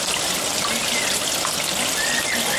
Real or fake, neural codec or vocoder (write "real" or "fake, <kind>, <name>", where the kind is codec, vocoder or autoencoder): real